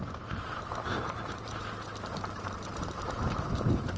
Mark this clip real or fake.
fake